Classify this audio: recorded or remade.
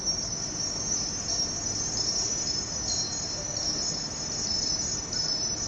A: recorded